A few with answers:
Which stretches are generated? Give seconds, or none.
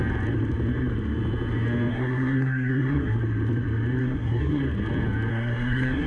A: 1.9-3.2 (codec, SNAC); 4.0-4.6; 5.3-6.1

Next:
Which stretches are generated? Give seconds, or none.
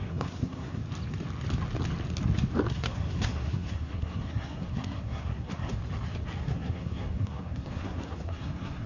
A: 0.0-0.8 (codec, SNAC); 2.7-5.8; 6.4-8.9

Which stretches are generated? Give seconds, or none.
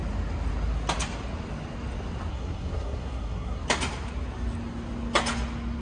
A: 2.3-3.6 (codec, SNAC)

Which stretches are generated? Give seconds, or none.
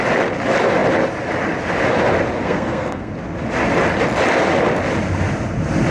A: 2.4-3.1 (codec, SNAC)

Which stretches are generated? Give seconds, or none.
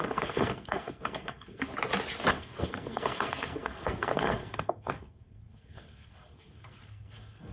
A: 0.0-1.7 (codec, SNAC); 2.3-7.5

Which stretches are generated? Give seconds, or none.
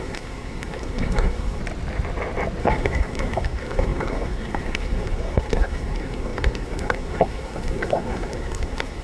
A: 0.0-1.6 (codec, SNAC); 2.6-9.0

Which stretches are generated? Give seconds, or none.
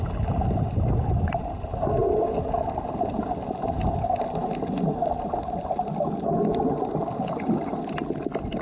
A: none